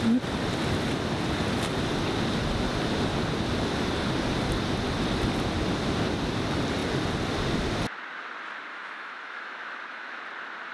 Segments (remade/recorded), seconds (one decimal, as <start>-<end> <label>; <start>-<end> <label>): 0.0-8.7 recorded; 8.7-10.2 remade; 10.2-10.7 recorded